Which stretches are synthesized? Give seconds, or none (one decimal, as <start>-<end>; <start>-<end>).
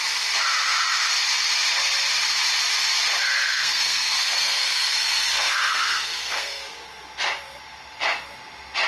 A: 3.5-6.6